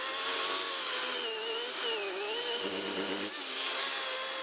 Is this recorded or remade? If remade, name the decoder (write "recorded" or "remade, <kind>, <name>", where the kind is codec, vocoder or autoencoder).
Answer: recorded